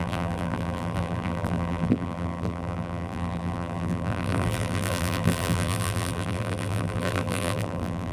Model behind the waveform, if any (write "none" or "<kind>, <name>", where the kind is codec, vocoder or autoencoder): vocoder, BigVGAN v2